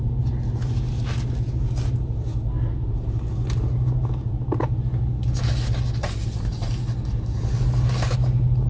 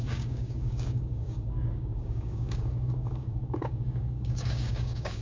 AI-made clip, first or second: second